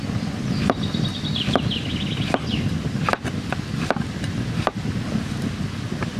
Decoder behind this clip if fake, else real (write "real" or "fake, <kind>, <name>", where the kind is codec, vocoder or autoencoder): real